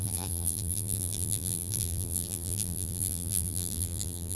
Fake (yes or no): yes